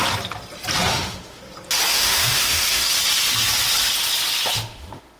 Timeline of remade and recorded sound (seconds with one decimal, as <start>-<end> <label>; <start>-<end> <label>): 0.0-0.9 recorded; 0.9-1.4 remade; 1.4-1.9 recorded; 1.9-2.9 remade; 2.9-4.6 recorded; 4.6-5.2 remade